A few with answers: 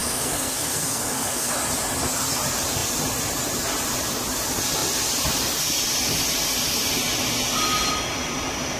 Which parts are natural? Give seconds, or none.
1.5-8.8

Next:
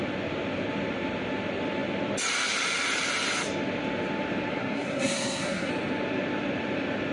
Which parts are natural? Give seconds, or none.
0.0-4.5; 5.7-7.1

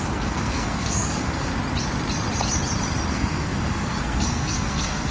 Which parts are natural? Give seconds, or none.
1.5-3.1

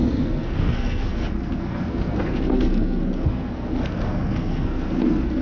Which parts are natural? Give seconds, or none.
none